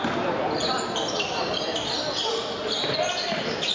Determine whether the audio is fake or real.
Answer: real